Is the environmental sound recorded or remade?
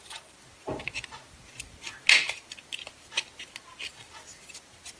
recorded